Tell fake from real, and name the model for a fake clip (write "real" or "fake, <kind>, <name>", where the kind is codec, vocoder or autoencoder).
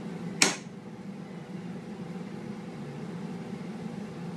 real